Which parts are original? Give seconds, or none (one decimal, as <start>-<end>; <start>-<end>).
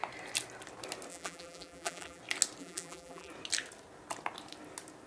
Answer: 0.0-1.1; 2.2-2.6; 3.3-5.1